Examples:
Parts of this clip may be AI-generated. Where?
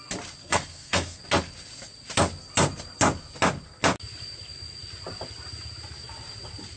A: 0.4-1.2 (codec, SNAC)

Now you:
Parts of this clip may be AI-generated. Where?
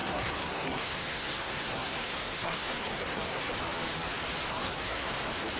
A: 0.0-3.4 (codec, SNAC); 4.5-5.1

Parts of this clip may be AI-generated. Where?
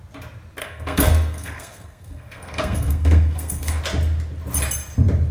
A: 0.6-3.8 (codec, SNAC)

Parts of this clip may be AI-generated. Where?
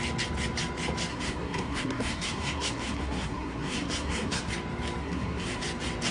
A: 1.1-4.5 (codec, SNAC); 5.0-5.6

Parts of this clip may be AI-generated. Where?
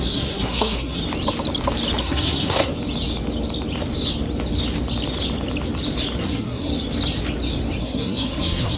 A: 0.0-1.0 (codec, SNAC); 2.0-2.7; 6.2-6.7; 7.8-8.8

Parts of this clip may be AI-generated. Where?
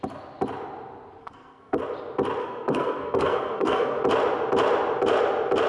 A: 1.2-1.8 (codec, SNAC); 2.4-4.0